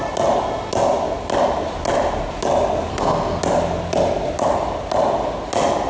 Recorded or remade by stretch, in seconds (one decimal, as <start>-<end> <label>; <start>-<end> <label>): 0.0-2.9 recorded; 2.9-3.4 remade; 3.4-5.9 recorded